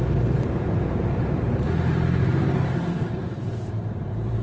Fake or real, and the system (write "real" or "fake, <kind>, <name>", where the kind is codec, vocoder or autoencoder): fake, vocoder, BigVGAN v2